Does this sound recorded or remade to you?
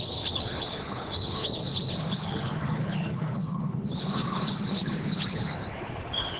remade